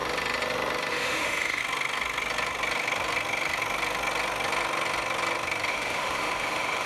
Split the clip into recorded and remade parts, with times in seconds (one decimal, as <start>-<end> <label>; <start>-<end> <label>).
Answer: 0.0-0.9 recorded; 0.9-1.6 remade; 1.6-5.7 recorded; 5.7-6.9 remade